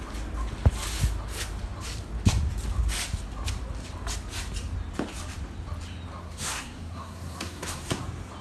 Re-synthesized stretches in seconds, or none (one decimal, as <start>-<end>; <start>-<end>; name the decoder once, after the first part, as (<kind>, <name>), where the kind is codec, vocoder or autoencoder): 6.2-8.0 (codec, SNAC)